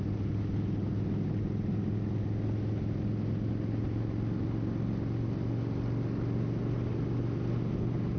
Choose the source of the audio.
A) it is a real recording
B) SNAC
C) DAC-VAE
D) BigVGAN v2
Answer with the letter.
A